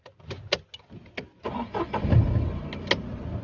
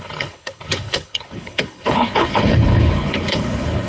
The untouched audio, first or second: first